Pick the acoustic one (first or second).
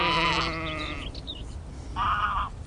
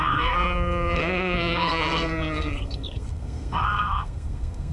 first